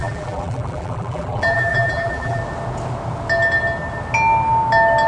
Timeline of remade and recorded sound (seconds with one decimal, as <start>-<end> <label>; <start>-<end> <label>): 0.0-2.4 remade; 2.4-5.1 recorded